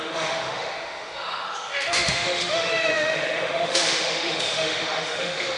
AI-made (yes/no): yes